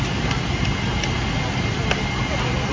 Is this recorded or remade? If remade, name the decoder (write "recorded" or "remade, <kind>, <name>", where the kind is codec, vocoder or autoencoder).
recorded